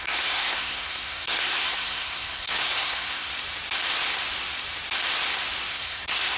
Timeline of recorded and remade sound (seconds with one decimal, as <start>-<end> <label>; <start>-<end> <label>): 0.0-3.3 remade; 3.3-5.7 recorded; 5.7-6.4 remade